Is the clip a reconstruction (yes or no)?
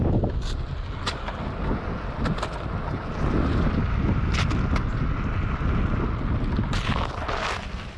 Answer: no